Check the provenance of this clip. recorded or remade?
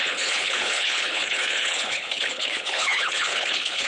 remade